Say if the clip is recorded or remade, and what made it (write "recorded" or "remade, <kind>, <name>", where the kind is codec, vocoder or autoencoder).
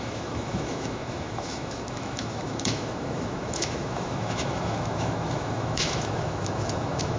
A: remade, autoencoder, DAC-VAE